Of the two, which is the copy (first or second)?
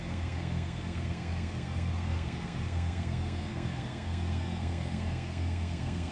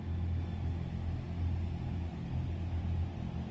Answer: first